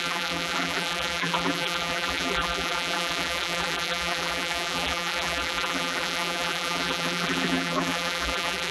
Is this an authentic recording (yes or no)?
no